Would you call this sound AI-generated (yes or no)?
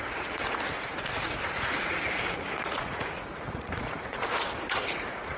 yes